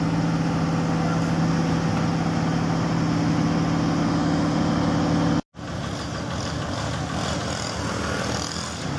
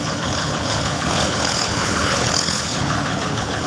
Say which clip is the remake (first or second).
second